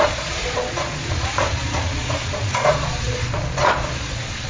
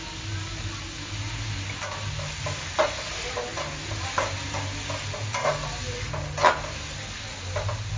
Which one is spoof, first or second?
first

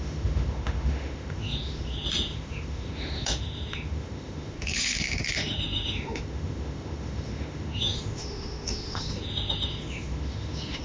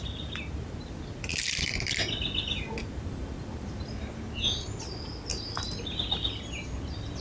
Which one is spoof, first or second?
first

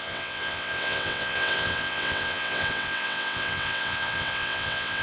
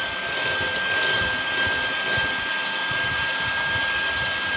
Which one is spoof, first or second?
first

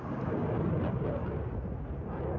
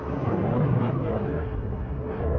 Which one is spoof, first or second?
second